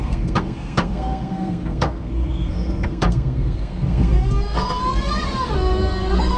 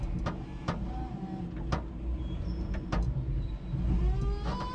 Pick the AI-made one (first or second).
first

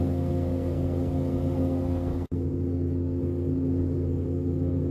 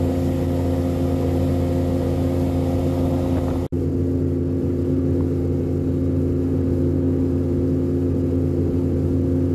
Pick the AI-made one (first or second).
first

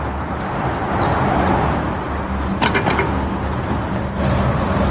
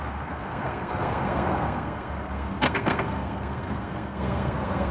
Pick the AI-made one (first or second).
second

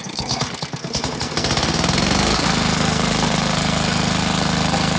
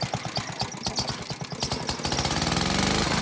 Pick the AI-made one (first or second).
first